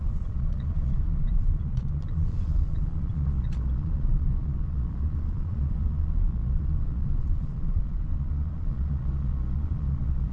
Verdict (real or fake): fake